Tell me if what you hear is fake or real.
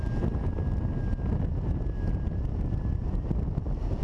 real